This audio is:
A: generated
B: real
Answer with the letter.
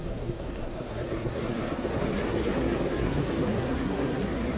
A